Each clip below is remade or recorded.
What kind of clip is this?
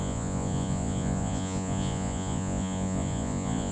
remade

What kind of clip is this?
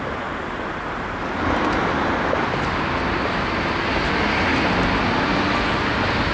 recorded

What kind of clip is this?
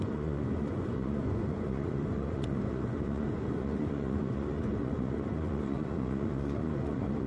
remade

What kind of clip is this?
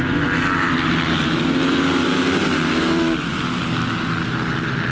recorded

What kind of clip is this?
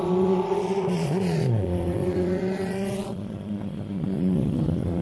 remade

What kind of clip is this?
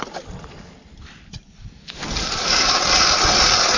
recorded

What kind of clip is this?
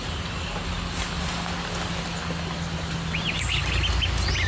recorded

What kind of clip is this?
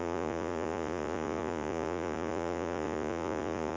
remade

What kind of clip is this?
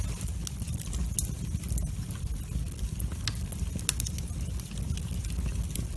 recorded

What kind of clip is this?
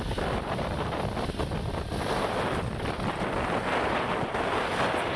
recorded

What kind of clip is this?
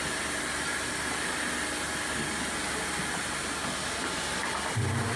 recorded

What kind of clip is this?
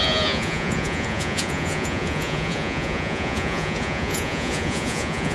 remade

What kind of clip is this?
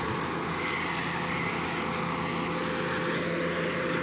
recorded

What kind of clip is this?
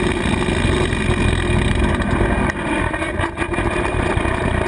recorded